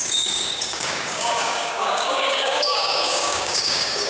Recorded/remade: remade